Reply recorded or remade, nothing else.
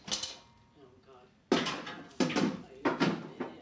recorded